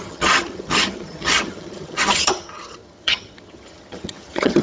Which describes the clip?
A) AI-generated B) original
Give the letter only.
A